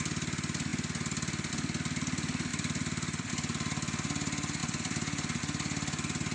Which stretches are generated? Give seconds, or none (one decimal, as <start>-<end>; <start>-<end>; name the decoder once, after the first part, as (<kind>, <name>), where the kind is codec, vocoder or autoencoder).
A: 2.5-3.3 (vocoder, BigVGAN v2); 4.6-5.4